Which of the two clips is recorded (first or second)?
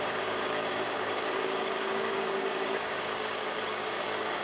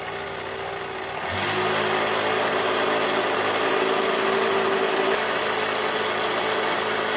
second